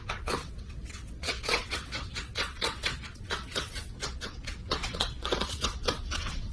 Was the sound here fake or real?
fake